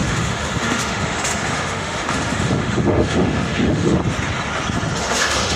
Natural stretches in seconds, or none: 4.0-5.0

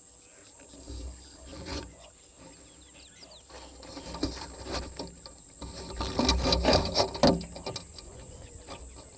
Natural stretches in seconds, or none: 0.0-1.5; 2.1-7.9; 8.5-9.2

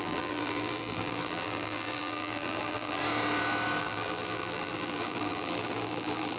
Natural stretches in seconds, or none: 3.0-3.8

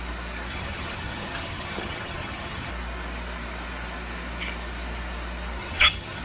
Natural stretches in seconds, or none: 0.0-0.5; 2.7-5.6

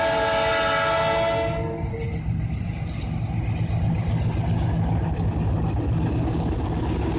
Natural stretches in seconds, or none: 0.0-1.9; 2.7-7.2

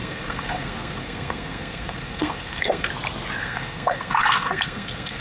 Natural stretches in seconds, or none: 2.9-3.4

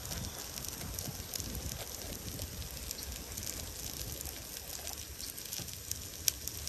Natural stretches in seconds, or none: 0.0-1.1; 2.8-6.7

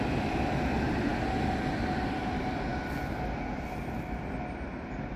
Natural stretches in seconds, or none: 0.0-5.2